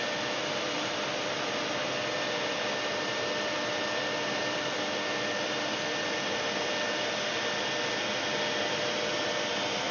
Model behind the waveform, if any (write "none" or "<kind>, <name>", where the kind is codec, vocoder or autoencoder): none